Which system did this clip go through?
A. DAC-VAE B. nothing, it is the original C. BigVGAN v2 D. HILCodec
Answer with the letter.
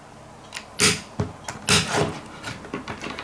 B